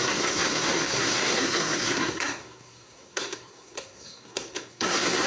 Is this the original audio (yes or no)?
no